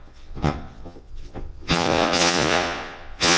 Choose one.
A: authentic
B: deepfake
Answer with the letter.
B